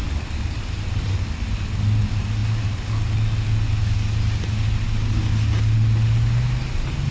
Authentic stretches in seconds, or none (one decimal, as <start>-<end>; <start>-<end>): 0.0-7.1